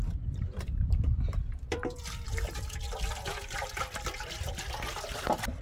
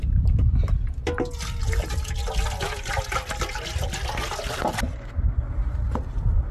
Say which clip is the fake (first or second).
first